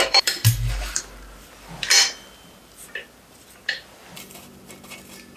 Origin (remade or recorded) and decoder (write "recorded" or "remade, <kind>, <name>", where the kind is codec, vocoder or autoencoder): remade, vocoder, BigVGAN v2